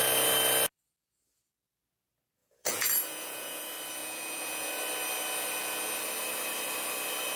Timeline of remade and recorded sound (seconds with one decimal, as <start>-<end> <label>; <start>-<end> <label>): 0.0-2.4 recorded; 2.4-3.6 remade; 3.6-4.0 recorded; 4.0-4.7 remade; 4.7-7.4 recorded